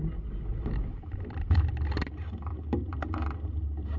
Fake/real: real